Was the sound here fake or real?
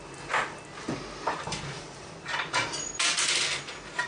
fake